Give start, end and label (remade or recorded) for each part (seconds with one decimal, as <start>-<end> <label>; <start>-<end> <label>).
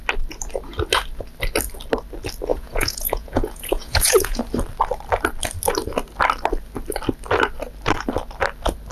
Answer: 0.0-2.5 recorded; 2.5-4.4 remade; 4.4-8.9 recorded